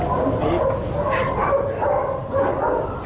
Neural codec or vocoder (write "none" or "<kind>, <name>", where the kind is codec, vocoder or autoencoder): none